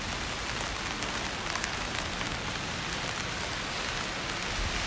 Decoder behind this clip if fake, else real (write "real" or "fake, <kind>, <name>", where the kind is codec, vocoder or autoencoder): real